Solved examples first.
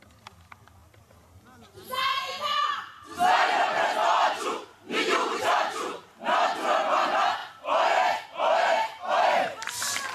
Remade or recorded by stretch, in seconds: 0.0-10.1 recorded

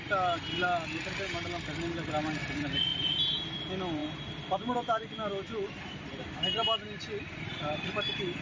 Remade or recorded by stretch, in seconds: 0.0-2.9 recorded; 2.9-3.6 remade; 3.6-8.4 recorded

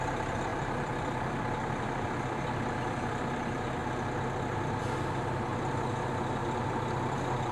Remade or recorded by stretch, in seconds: 0.0-3.8 remade; 3.8-5.1 recorded; 5.1-5.5 remade; 5.5-6.9 recorded; 6.9-7.5 remade

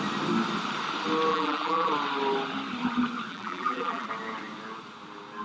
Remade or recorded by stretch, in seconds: 0.0-1.3 recorded; 1.3-1.9 remade; 1.9-3.3 recorded; 3.3-4.1 remade; 4.1-5.4 recorded

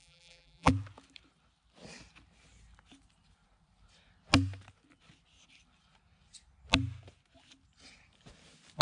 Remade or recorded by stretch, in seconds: 0.0-0.7 remade; 0.7-8.8 recorded